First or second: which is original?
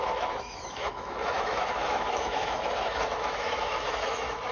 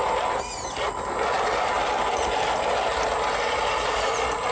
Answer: second